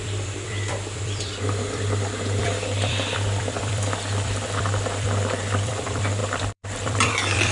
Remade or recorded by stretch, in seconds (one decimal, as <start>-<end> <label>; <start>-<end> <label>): 0.0-7.5 remade